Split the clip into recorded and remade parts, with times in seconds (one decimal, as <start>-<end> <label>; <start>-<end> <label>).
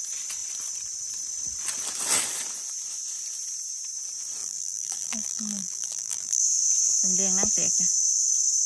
0.0-4.4 recorded; 4.4-6.4 remade; 6.4-8.7 recorded